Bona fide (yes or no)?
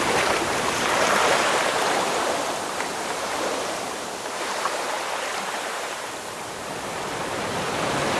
no